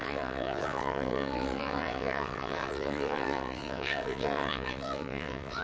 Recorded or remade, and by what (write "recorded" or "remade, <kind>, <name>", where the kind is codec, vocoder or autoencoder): remade, vocoder, WaveNeXt